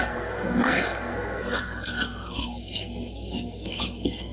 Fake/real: fake